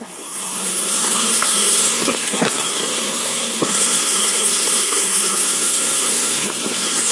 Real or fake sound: fake